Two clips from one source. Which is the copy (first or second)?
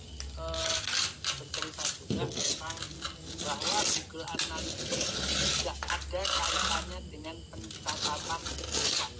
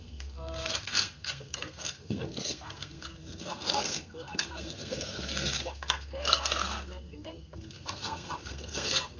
second